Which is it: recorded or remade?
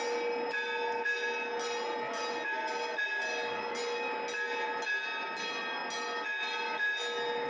recorded